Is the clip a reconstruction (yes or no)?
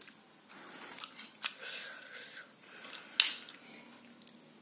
no